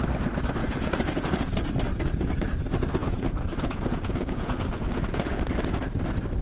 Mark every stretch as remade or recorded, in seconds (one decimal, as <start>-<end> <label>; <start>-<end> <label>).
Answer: 0.0-0.6 recorded; 0.6-1.5 remade; 1.5-3.0 recorded; 3.0-4.9 remade; 4.9-6.4 recorded